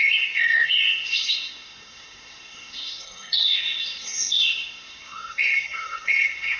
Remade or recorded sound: remade